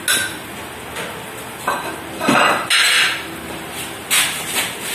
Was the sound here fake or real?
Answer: real